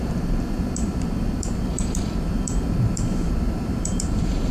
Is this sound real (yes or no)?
no